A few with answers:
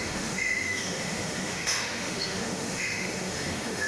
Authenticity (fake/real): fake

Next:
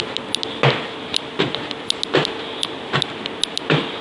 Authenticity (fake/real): real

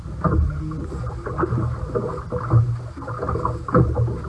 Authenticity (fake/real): real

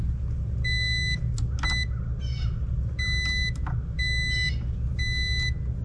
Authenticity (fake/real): real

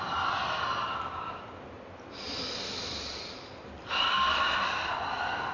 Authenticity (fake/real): real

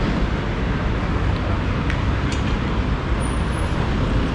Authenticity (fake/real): real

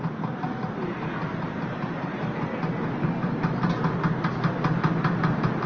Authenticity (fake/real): real